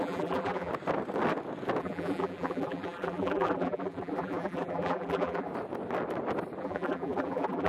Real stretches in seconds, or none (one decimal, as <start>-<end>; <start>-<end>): 0.7-1.8; 5.5-6.6